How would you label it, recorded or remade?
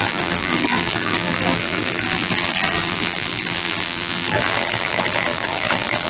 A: remade